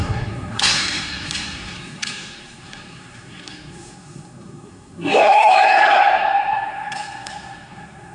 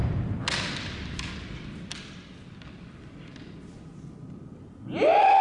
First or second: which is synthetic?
first